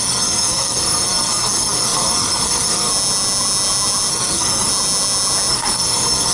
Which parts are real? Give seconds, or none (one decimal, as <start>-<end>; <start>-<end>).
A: 2.9-4.1; 4.7-5.5